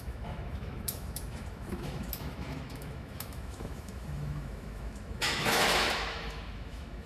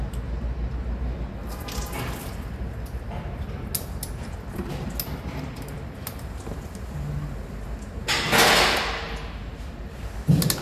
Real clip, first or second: second